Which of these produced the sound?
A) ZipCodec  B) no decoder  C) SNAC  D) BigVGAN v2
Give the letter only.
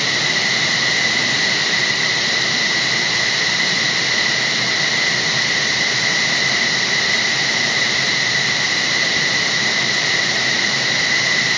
D